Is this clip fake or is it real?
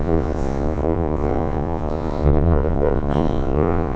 fake